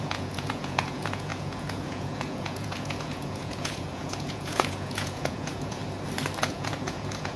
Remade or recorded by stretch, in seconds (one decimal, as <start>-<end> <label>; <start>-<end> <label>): 0.0-5.8 remade; 5.8-6.4 recorded; 6.4-7.4 remade

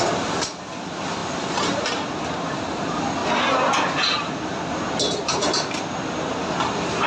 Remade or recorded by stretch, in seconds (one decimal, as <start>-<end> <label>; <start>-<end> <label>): 0.0-7.1 recorded

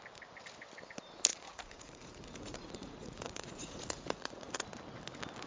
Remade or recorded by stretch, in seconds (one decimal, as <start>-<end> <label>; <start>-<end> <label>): 0.0-1.3 recorded; 1.3-4.6 remade; 4.6-5.5 recorded

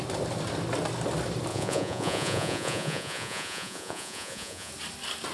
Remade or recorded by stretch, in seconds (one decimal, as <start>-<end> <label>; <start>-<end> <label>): 0.0-1.5 recorded; 1.5-4.7 remade; 4.7-5.3 recorded